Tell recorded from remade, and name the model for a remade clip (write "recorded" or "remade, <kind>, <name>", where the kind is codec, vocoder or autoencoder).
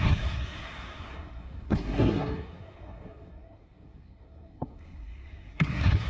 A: remade, codec, SNAC